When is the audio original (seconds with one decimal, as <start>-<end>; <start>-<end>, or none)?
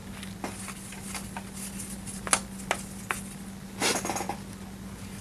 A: 0.0-5.2